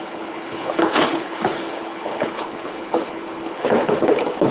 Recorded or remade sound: remade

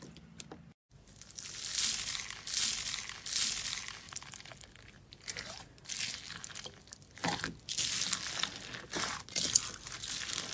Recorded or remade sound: recorded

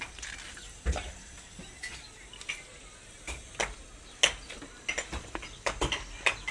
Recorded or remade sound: recorded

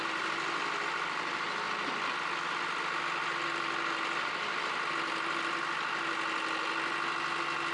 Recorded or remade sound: recorded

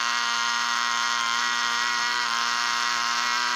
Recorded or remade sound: remade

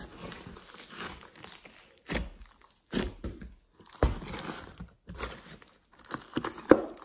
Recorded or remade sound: recorded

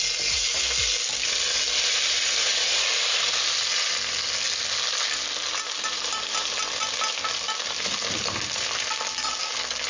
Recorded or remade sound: recorded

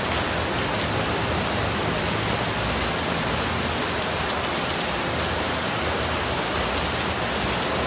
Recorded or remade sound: recorded